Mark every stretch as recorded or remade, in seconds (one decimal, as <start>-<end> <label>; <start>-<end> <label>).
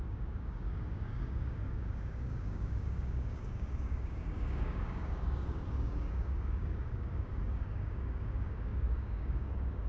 0.0-9.9 remade